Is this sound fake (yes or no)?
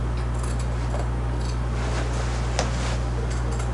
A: no